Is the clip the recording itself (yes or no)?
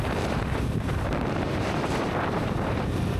no